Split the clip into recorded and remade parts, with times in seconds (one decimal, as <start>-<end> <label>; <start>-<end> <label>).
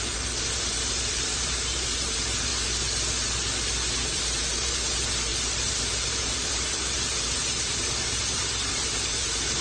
0.0-2.5 remade; 2.5-3.9 recorded; 3.9-9.6 remade